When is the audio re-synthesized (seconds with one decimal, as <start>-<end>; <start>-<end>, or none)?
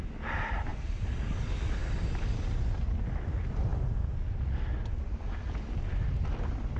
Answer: none